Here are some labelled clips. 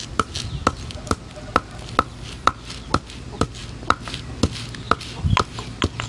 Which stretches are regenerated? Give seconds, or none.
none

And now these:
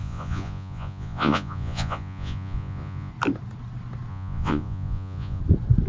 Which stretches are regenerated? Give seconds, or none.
0.0-3.1 (vocoder, Vocos); 4.1-5.4

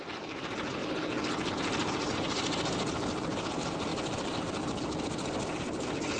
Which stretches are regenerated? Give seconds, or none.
none

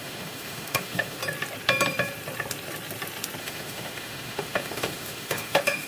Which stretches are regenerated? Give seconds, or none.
0.0-1.2 (autoencoder, DAC-VAE); 3.4-5.9

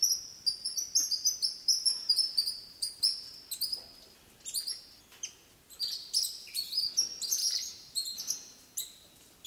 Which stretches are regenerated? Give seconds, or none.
1.7-3.0 (vocoder, BigVGAN v2); 6.0-6.9; 7.4-9.1

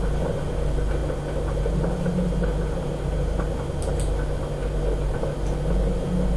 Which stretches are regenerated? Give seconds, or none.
none

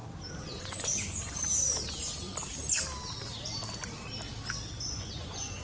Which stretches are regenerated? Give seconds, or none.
0.6-1.4 (vocoder, Vocos); 4.8-5.6